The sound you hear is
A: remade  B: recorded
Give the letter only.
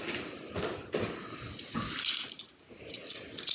B